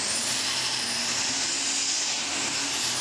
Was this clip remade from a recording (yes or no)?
no